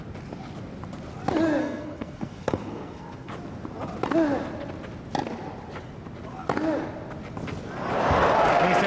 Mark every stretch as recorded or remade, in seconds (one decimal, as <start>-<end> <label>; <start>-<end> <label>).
0.0-1.6 recorded; 1.6-3.3 remade; 3.3-8.9 recorded